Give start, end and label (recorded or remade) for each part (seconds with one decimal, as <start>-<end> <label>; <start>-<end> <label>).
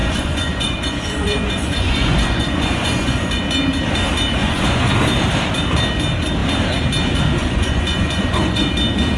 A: 0.0-3.4 remade; 3.4-4.4 recorded; 4.4-4.9 remade; 4.9-7.4 recorded; 7.4-8.7 remade; 8.7-9.2 recorded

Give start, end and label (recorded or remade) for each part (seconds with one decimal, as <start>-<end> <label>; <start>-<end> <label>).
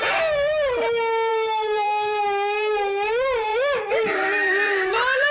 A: 0.0-1.3 recorded; 1.3-2.2 remade; 2.2-3.5 recorded; 3.5-5.3 remade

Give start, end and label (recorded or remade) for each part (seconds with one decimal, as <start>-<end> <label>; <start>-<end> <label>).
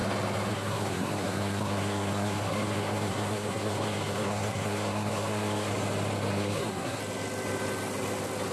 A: 0.0-0.5 recorded; 0.5-5.7 remade; 5.7-6.3 recorded; 6.3-7.0 remade; 7.0-8.5 recorded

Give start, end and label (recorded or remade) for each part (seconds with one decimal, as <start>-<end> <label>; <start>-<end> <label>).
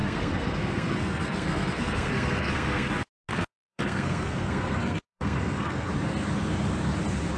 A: 0.0-2.9 remade; 2.9-3.3 recorded; 3.3-5.9 remade; 5.9-7.4 recorded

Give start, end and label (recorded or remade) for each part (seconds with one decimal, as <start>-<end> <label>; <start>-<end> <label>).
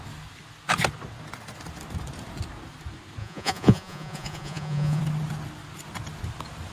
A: 0.0-3.2 recorded; 3.2-5.0 remade; 5.0-6.7 recorded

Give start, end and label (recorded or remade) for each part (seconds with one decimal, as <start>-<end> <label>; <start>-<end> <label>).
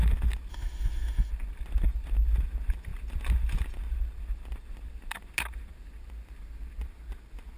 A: 0.0-0.5 recorded; 0.5-1.3 remade; 1.3-7.6 recorded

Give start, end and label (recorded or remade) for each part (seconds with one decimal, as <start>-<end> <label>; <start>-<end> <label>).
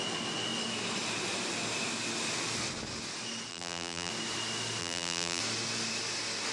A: 0.0-3.5 recorded; 3.5-4.1 remade; 4.1-4.8 recorded; 4.8-5.4 remade; 5.4-6.5 recorded